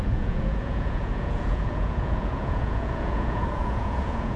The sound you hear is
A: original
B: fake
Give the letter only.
B